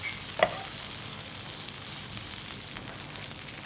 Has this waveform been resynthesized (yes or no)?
no